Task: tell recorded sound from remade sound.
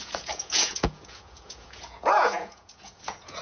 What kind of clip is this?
remade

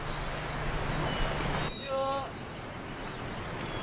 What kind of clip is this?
recorded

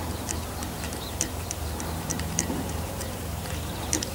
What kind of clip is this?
remade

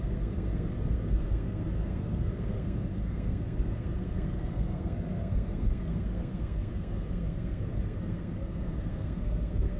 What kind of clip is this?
remade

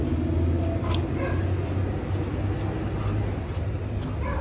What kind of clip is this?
recorded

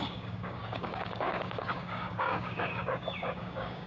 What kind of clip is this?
remade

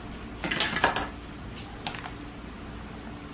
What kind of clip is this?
recorded